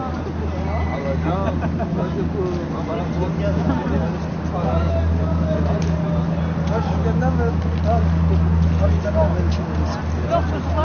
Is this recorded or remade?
recorded